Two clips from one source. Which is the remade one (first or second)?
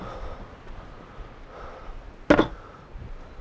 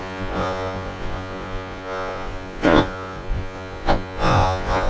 second